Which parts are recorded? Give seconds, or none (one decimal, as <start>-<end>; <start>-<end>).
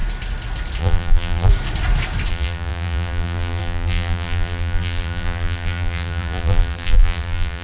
0.0-0.8; 1.5-2.3